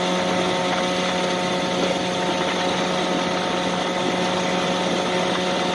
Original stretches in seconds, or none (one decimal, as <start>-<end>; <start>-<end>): 0.0-5.7